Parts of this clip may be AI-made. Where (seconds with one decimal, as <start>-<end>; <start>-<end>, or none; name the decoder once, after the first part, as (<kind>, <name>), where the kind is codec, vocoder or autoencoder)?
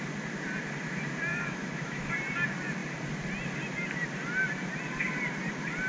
1.3-2.1 (autoencoder, DAC-VAE)